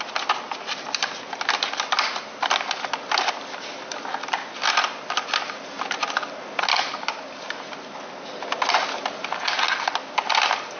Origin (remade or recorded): recorded